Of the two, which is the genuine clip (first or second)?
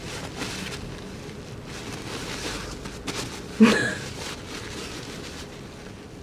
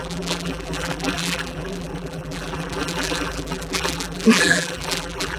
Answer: first